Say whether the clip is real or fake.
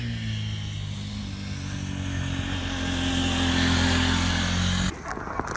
real